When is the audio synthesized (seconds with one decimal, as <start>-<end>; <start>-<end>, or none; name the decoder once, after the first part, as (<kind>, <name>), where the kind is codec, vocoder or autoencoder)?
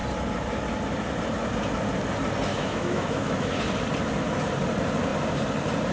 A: 2.5-3.6 (autoencoder, DAC-VAE)